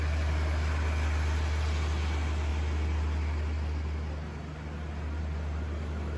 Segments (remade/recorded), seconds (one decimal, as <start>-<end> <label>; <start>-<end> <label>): 0.0-6.2 recorded